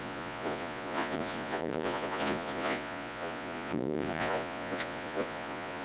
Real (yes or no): no